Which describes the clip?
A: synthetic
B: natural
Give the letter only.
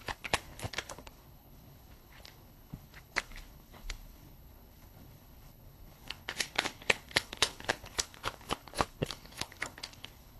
A